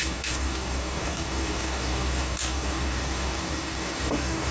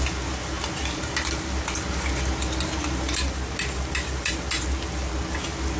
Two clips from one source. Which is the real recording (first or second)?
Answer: second